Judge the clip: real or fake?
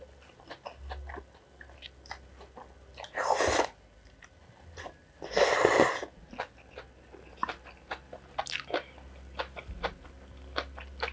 real